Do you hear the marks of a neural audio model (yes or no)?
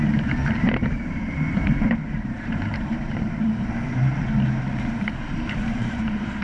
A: yes